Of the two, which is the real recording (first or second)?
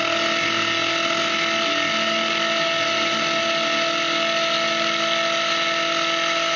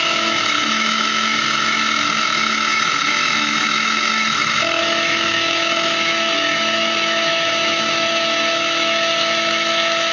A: first